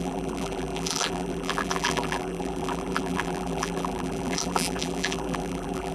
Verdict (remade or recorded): remade